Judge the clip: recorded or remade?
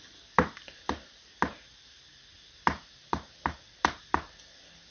recorded